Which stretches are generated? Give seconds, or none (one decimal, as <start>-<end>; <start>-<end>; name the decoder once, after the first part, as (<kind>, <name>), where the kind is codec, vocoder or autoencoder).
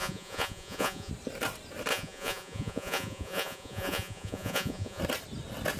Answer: 0.0-1.1 (vocoder, Vocos); 1.9-5.0